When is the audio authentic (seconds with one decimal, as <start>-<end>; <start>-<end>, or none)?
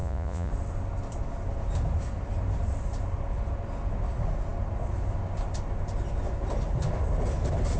0.5-7.8